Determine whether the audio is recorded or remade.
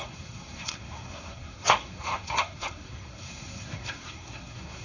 remade